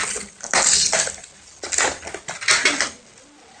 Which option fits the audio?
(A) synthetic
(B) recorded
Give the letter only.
B